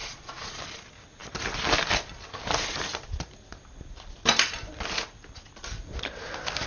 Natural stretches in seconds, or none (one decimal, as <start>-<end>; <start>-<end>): 0.6-6.7